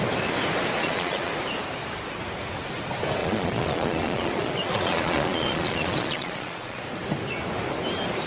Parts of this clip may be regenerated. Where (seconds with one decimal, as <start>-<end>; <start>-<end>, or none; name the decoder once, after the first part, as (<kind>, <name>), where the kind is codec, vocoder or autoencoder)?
0.8-1.3 (vocoder, Vocos); 3.2-6.8